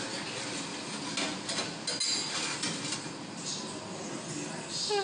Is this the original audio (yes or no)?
yes